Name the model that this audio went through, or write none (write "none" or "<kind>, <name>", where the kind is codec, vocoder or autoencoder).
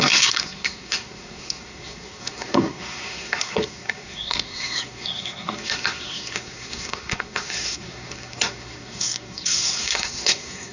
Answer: codec, SNAC